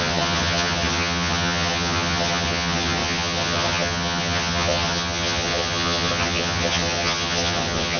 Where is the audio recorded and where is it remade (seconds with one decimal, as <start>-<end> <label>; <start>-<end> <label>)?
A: 0.0-8.0 remade